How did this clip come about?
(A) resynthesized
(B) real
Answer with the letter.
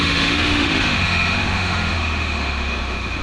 A